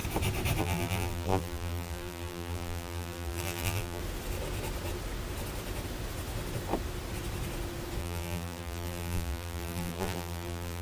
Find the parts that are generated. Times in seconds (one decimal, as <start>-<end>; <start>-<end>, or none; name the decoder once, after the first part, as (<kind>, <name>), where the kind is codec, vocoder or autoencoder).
0.6-4.0 (vocoder, BigVGAN v2); 8.0-10.8